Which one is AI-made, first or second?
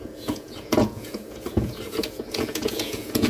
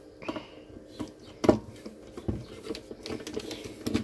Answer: first